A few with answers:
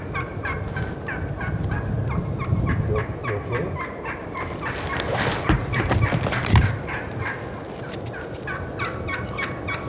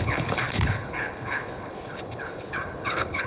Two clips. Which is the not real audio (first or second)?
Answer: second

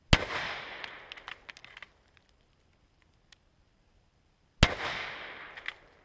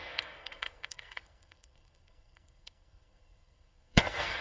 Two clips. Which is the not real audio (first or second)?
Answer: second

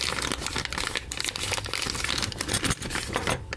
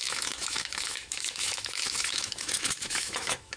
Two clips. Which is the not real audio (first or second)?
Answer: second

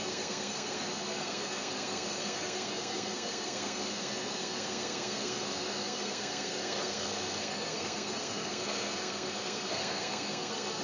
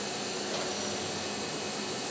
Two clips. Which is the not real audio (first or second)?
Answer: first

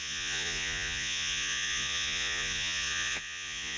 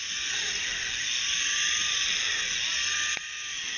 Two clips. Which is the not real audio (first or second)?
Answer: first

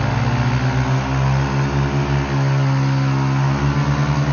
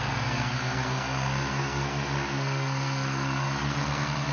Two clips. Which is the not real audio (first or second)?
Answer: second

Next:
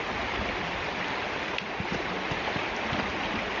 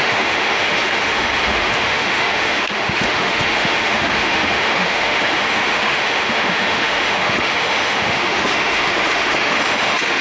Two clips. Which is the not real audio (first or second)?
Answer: second